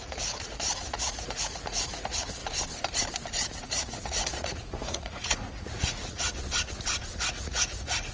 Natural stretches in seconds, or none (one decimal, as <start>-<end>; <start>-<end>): 2.4-3.6; 6.3-7.2